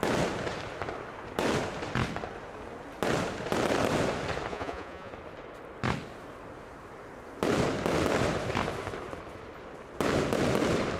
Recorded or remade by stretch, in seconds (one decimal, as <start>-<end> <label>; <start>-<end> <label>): 0.0-4.5 recorded; 4.5-5.1 remade; 5.1-11.0 recorded